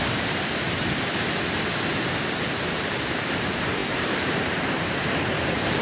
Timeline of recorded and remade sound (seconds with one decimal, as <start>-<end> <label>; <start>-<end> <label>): 0.0-1.1 remade; 1.1-2.6 recorded; 2.6-5.8 remade